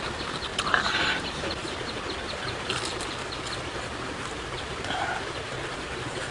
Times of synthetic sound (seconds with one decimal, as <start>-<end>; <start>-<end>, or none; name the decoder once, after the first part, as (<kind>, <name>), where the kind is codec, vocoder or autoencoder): 0.5-1.2 (vocoder, BigVGAN v2)

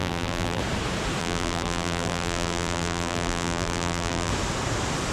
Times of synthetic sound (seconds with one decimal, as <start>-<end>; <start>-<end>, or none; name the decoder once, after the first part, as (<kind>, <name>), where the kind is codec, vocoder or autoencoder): 0.0-0.6 (vocoder, BigVGAN v2); 1.2-4.3

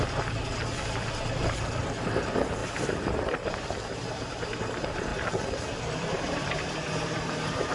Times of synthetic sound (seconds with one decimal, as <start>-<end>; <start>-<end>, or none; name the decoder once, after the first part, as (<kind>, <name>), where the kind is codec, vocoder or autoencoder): 0.0-5.1 (vocoder, BigVGAN v2); 5.7-7.7

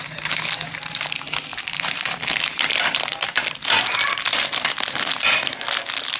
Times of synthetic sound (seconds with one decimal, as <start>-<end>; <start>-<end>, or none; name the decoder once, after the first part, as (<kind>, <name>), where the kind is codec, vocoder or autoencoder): 1.5-3.8 (vocoder, BigVGAN v2)